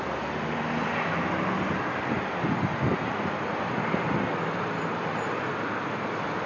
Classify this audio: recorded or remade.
recorded